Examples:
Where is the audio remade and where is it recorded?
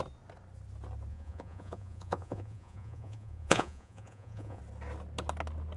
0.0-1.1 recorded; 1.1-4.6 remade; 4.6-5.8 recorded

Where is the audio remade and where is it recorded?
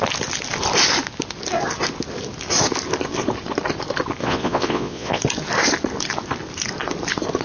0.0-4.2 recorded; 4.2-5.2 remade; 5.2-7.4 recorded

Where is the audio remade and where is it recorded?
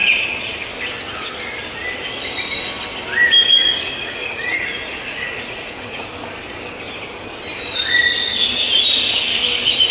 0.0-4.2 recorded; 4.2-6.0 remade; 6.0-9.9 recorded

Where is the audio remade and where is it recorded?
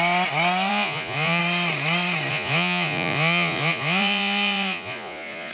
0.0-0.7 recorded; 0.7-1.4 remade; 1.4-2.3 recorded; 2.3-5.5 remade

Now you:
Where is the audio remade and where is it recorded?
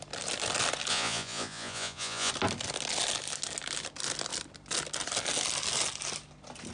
0.0-0.9 recorded; 0.9-2.3 remade; 2.3-6.7 recorded